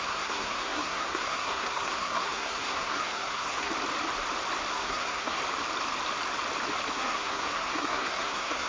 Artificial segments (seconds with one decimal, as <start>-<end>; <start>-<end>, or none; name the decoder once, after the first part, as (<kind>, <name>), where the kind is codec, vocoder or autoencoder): 0.0-3.7 (codec, SNAC); 4.7-5.4; 6.9-8.7